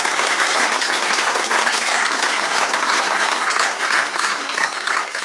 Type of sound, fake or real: fake